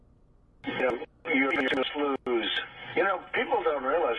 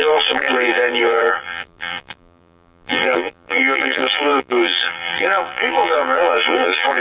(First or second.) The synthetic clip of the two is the second